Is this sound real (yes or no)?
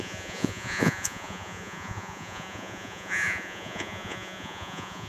no